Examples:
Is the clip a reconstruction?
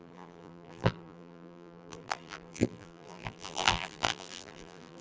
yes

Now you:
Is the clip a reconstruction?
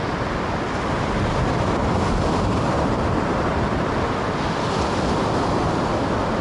no